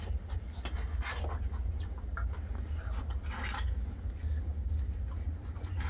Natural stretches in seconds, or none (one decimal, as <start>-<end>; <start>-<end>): 0.0-5.9